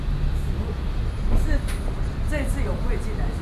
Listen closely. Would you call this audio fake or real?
real